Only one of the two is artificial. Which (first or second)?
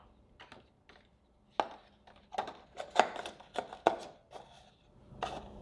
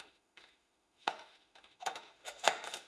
second